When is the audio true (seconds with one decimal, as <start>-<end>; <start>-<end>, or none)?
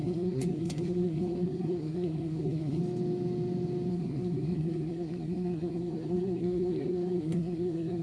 2.8-3.9